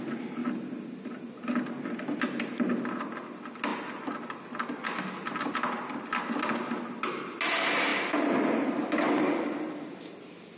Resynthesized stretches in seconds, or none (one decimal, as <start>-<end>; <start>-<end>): none